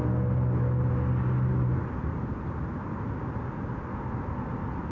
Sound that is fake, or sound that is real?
real